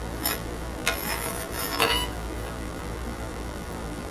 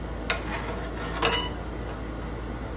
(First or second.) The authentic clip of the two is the second